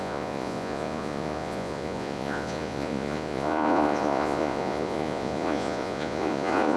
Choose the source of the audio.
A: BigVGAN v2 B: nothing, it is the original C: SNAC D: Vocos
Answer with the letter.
D